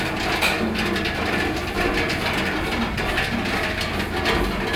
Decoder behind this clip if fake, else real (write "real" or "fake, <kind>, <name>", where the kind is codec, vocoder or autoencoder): real